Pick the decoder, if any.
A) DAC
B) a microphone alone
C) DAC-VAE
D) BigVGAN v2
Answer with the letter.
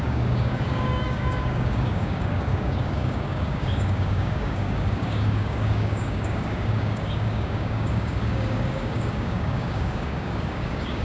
A